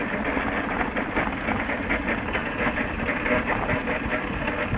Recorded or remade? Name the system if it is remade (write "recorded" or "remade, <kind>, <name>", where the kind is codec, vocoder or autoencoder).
recorded